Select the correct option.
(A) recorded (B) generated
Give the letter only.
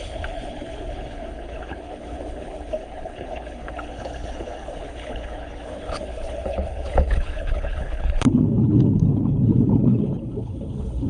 B